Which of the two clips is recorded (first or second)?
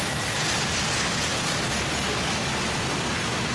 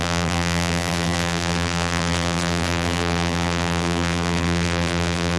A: first